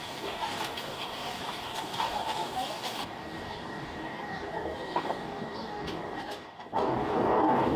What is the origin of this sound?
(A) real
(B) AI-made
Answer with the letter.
B